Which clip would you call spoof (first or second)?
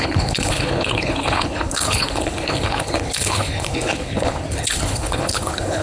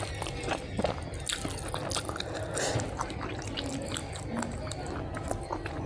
first